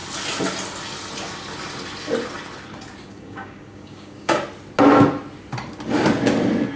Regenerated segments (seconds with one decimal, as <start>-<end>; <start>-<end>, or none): 3.1-4.4